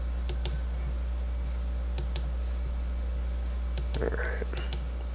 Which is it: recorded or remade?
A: recorded